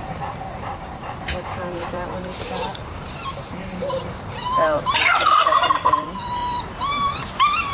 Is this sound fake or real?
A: fake